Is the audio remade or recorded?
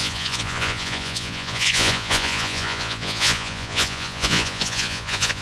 remade